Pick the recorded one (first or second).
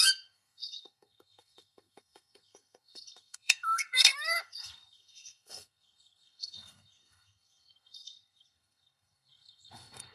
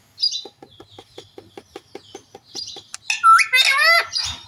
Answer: second